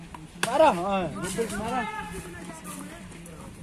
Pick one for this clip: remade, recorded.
recorded